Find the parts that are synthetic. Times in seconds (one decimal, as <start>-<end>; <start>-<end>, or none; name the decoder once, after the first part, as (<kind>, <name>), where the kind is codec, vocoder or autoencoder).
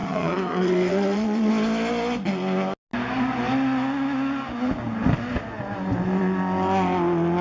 0.0-1.5 (vocoder, Vocos)